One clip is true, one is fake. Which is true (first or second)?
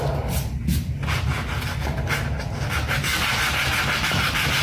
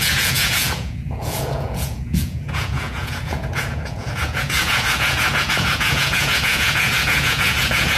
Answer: first